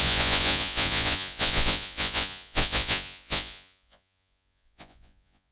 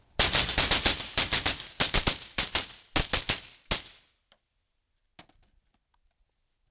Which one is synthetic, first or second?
first